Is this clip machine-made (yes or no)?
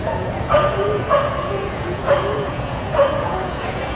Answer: yes